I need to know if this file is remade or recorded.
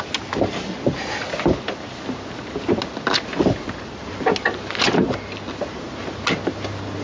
recorded